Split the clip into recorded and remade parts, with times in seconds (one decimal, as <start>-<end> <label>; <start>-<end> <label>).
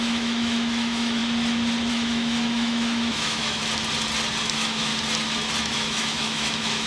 0.0-1.2 remade; 1.2-1.9 recorded; 1.9-3.6 remade; 3.6-4.4 recorded; 4.4-4.9 remade; 4.9-5.6 recorded; 5.6-6.9 remade